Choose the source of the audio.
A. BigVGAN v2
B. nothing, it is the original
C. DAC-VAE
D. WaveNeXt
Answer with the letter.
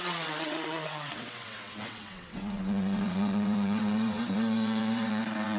D